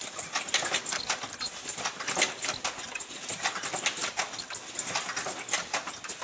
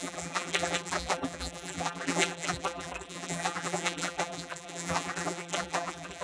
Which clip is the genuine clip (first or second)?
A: first